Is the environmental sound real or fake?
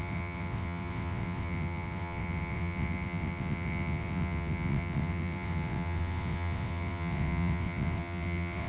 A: fake